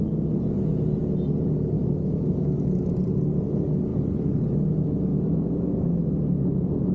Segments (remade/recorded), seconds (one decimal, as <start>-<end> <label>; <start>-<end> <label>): 0.0-1.8 recorded; 1.8-2.9 remade; 2.9-5.1 recorded; 5.1-6.0 remade; 6.0-6.9 recorded